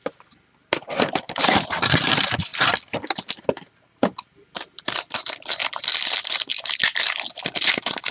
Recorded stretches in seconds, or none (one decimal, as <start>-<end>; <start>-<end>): 0.0-8.1